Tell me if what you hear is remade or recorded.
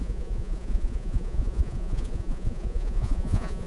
remade